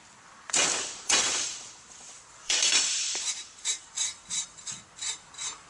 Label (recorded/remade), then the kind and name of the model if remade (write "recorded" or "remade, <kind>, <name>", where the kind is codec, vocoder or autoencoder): remade, vocoder, BigVGAN v2